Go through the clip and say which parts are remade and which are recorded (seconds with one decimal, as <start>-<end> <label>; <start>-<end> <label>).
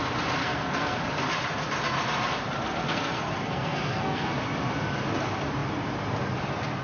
0.0-0.4 recorded; 0.4-1.0 remade; 1.0-2.9 recorded; 2.9-4.4 remade; 4.4-6.8 recorded